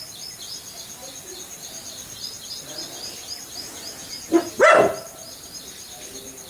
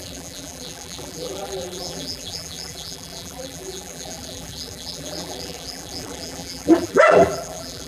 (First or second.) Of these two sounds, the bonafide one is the first